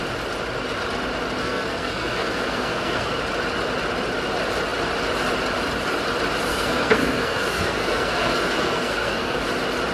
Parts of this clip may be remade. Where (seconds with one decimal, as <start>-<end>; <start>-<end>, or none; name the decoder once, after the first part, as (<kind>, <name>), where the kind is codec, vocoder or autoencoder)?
1.4-3.2 (codec, SNAC); 6.5-9.4